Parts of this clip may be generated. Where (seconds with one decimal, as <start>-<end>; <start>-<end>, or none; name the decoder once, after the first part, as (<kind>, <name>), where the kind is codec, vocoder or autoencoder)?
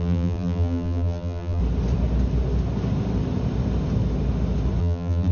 0.0-1.6 (vocoder, BigVGAN v2); 4.8-5.3